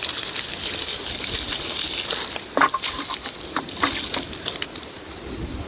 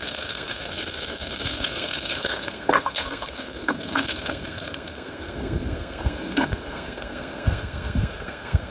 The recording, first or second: first